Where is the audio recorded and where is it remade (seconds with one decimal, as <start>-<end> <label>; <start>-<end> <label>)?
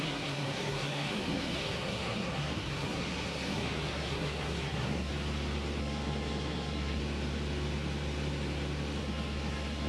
0.0-5.1 remade; 5.1-5.8 recorded; 5.8-7.0 remade; 7.0-9.0 recorded; 9.0-9.9 remade